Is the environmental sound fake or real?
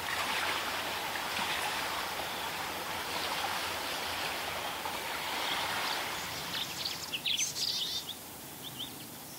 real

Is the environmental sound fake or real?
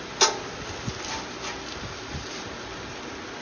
real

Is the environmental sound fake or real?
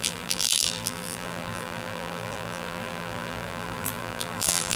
fake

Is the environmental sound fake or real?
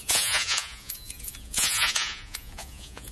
fake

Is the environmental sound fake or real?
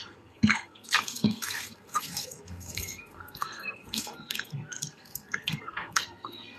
fake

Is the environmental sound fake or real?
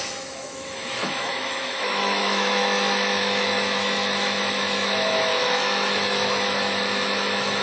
fake